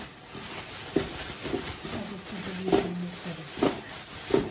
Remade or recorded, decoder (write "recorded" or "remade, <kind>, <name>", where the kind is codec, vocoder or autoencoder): recorded